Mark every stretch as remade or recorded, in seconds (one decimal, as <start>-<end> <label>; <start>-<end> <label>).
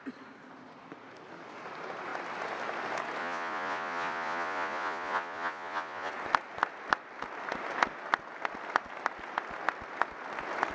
0.0-3.2 recorded; 3.2-6.1 remade; 6.1-10.7 recorded